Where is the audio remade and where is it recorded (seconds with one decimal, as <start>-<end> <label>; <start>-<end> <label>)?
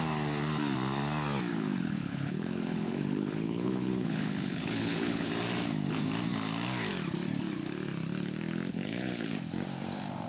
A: 0.0-1.5 recorded; 1.5-5.3 remade; 5.3-8.7 recorded; 8.7-9.3 remade; 9.3-10.3 recorded